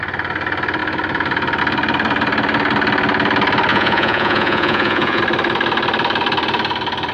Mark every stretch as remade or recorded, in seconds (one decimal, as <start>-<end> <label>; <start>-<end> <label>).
0.0-3.7 recorded; 3.7-5.2 remade; 5.2-7.1 recorded